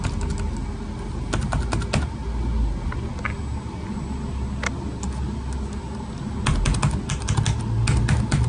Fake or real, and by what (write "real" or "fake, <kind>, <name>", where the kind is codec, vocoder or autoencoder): real